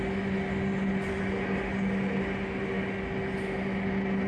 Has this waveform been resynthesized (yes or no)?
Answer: no